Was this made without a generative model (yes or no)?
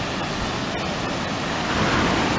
yes